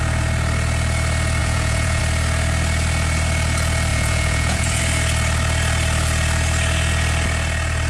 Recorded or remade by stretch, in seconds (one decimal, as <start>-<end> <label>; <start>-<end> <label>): 0.0-1.4 recorded; 1.4-2.0 remade; 2.0-3.9 recorded; 3.9-4.8 remade; 4.8-7.9 recorded